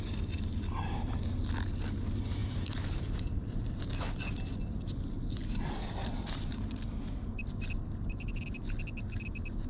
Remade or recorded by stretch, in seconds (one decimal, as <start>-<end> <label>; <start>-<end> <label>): 0.0-2.4 recorded; 2.4-3.8 remade; 3.8-9.7 recorded